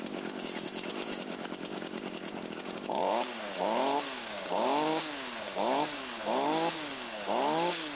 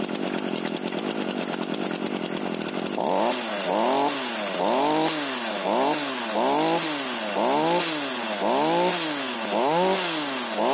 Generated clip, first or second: first